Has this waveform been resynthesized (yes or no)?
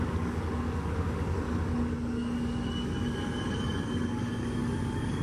yes